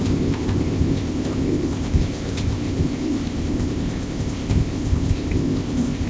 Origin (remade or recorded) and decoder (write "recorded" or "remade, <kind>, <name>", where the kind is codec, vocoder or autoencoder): remade, codec, ZipCodec